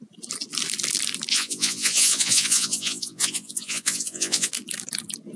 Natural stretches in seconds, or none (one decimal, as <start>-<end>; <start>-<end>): 0.0-1.3; 4.5-5.4